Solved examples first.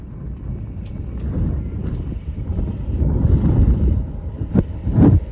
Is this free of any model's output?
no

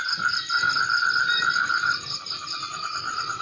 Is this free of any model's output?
no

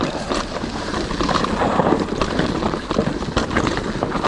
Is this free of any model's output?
no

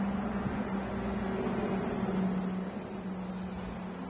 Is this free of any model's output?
yes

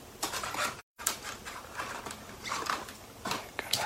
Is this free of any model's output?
no